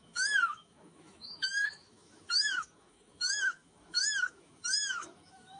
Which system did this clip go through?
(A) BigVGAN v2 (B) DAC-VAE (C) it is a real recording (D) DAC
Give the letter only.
B